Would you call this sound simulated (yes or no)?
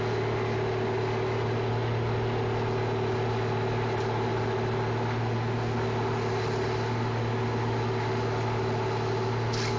no